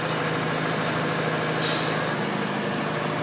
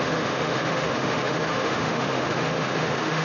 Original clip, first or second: first